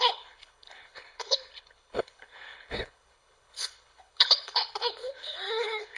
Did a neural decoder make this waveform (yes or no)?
yes